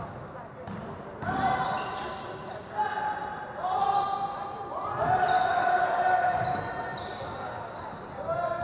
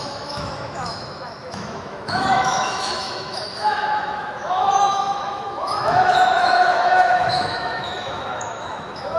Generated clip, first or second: second